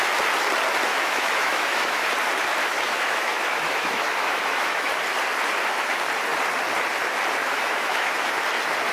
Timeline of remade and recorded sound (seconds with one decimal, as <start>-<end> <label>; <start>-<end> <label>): 0.0-0.9 recorded; 0.9-2.1 remade; 2.1-2.6 recorded; 2.6-4.9 remade; 4.9-7.4 recorded; 7.4-8.3 remade; 8.3-8.9 recorded